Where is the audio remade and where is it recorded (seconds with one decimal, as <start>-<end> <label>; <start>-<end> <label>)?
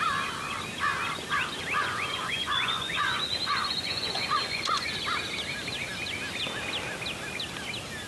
0.0-1.8 recorded; 1.8-5.0 remade; 5.0-8.1 recorded